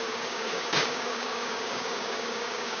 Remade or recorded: remade